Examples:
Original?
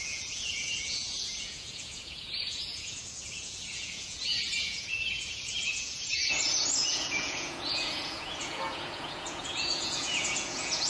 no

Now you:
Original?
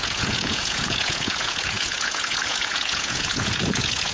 no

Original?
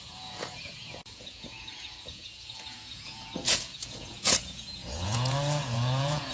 no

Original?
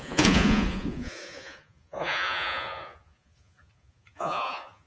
no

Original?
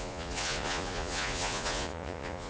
no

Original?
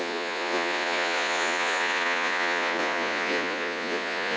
no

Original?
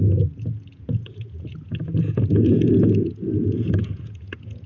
no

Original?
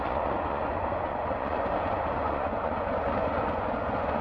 no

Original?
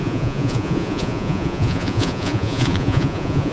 no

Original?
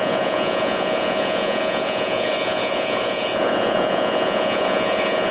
no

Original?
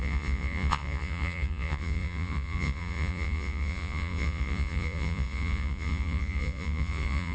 no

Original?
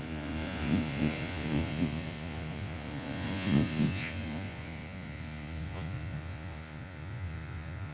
no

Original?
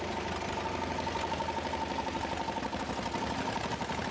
yes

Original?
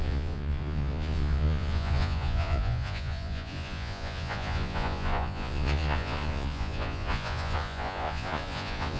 no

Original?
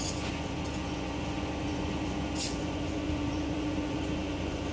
no